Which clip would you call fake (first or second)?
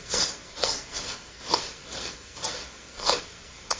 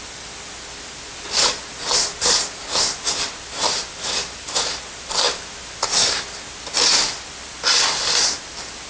first